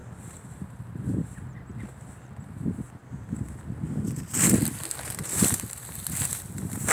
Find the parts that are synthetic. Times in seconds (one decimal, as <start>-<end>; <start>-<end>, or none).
0.0-1.7; 2.4-3.0; 5.4-6.9